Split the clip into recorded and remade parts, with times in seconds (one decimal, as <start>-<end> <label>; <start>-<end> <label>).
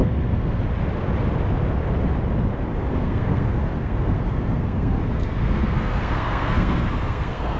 0.0-0.6 remade; 0.6-2.9 recorded; 2.9-7.6 remade